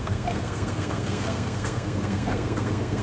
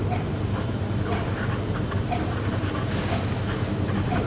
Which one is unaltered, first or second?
second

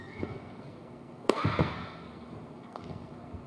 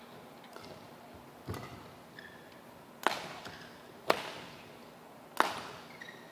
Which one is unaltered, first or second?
second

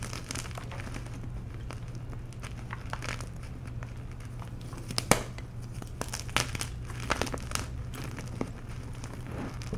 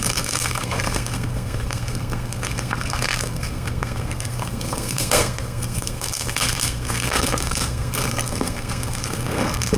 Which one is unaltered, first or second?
first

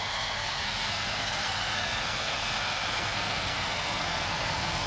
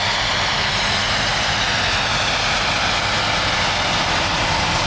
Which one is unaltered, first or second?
second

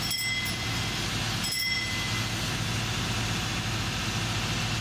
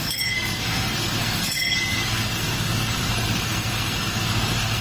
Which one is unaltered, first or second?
first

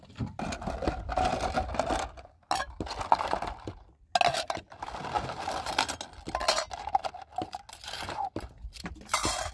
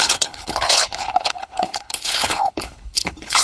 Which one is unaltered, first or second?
first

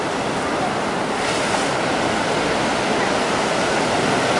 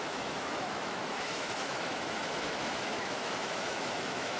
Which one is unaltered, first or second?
first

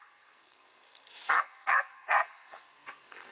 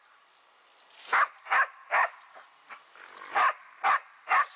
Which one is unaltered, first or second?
second